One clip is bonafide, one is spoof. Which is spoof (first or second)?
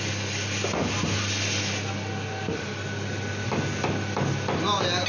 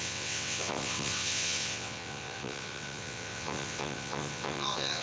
second